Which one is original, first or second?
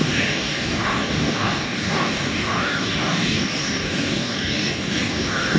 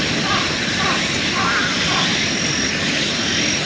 second